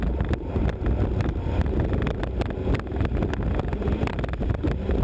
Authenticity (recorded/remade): recorded